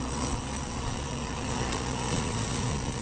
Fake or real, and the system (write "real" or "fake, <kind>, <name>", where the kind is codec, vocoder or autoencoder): fake, vocoder, Vocos